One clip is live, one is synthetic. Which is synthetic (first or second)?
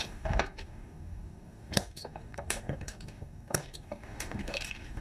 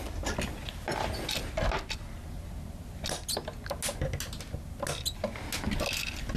first